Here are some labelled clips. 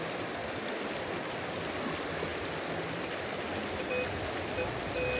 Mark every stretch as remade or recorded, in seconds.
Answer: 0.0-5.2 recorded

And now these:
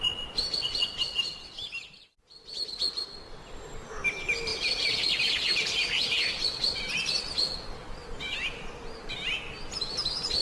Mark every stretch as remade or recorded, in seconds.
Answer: 0.0-10.4 recorded